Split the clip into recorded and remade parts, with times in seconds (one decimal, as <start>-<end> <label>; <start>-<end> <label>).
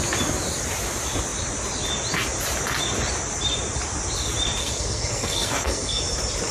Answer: 0.0-4.6 recorded; 4.6-6.0 remade; 6.0-6.5 recorded